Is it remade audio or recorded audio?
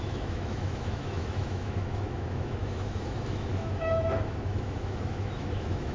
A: remade